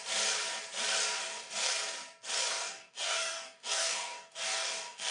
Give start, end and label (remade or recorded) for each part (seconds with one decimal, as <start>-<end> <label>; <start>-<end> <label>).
0.0-1.2 recorded; 1.2-1.7 remade; 1.7-2.5 recorded; 2.5-5.1 remade